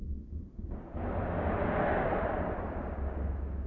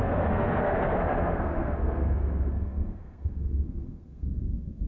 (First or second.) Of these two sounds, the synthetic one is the second